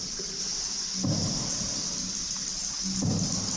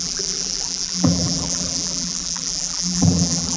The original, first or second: first